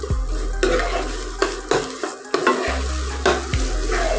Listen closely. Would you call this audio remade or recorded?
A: recorded